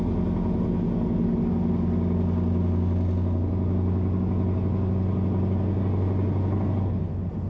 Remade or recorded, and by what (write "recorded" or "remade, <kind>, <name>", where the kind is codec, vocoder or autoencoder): recorded